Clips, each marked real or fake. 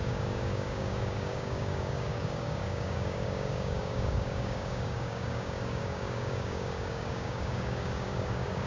fake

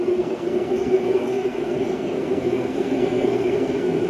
fake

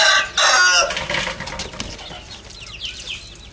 real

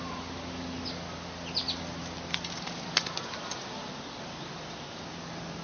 real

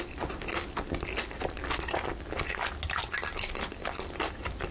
real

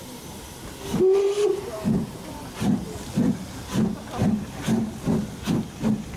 real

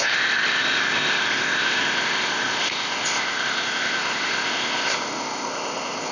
fake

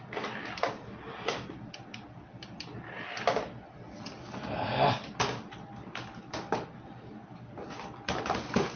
real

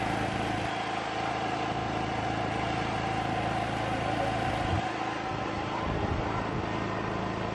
real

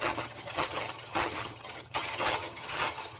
fake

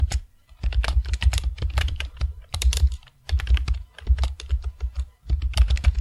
fake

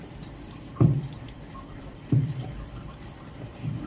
fake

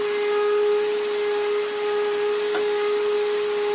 real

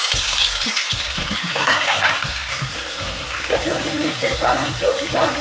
fake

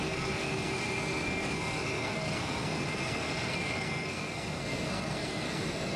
fake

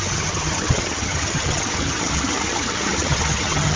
fake